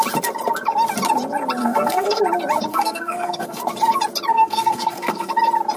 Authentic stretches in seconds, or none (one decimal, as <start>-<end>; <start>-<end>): 0.0-1.6; 2.2-2.7; 3.6-4.3; 5.3-5.8